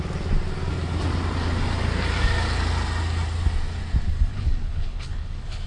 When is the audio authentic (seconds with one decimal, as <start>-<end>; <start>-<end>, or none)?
0.0-4.3